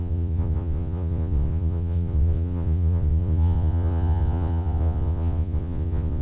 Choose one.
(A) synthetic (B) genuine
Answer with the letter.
A